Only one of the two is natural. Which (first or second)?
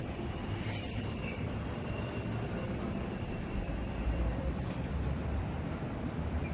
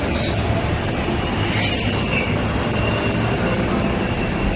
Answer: second